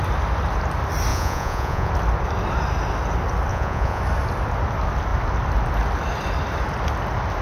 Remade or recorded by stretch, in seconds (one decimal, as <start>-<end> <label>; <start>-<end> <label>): 0.0-1.1 recorded; 1.1-1.9 remade; 1.9-3.5 recorded; 3.5-4.0 remade; 4.0-7.4 recorded